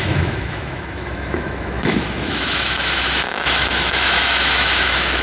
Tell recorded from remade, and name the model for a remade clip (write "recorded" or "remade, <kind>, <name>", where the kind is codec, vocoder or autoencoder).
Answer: remade, autoencoder, DAC-VAE